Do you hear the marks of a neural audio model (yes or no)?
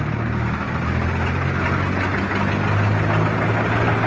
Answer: no